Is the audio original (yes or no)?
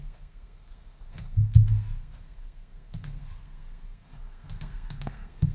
no